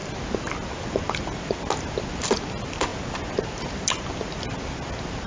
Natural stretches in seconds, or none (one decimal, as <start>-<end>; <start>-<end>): 0.0-5.3